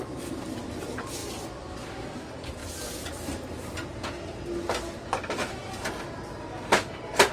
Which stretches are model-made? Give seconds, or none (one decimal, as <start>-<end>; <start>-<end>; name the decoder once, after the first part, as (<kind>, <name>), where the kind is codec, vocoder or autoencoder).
0.0-1.2 (vocoder, BigVGAN v2); 2.1-2.6; 5.1-5.6; 6.1-7.3